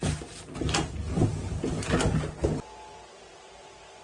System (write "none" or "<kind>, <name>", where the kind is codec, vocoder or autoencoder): none